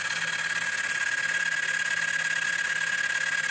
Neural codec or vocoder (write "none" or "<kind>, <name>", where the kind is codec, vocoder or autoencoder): none